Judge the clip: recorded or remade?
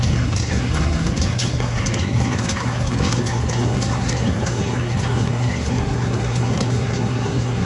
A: remade